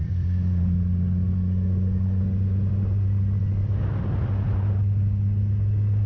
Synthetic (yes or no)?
no